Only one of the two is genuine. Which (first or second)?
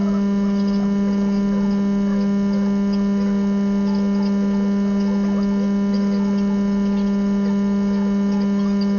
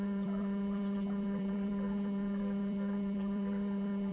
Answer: first